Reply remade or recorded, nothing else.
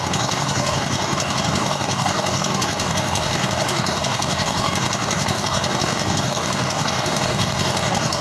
remade